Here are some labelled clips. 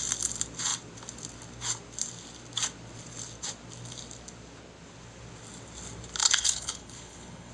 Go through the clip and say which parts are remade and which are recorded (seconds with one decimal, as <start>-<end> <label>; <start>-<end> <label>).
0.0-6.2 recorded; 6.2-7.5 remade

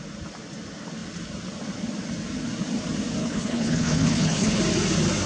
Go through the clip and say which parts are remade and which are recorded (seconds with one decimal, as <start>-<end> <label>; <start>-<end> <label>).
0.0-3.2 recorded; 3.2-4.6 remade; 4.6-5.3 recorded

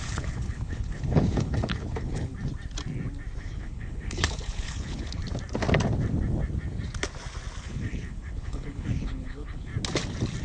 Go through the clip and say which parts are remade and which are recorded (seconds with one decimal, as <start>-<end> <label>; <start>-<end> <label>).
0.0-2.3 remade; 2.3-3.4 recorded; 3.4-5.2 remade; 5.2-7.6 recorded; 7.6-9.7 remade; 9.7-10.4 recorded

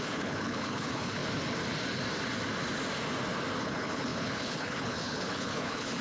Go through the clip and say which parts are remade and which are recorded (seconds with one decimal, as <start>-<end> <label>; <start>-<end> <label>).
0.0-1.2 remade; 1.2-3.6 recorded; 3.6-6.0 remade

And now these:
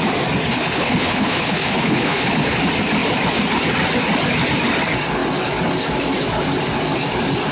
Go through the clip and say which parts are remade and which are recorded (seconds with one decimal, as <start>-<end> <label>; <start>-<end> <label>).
0.0-0.5 recorded; 0.5-2.6 remade; 2.6-7.5 recorded

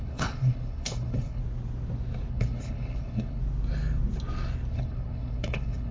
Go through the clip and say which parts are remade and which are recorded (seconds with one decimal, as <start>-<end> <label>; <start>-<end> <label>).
0.0-1.4 remade; 1.4-2.3 recorded; 2.3-3.4 remade; 3.4-4.7 recorded; 4.7-5.9 remade

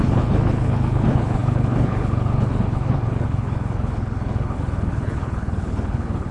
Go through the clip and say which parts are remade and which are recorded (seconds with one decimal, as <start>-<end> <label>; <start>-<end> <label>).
0.0-6.3 remade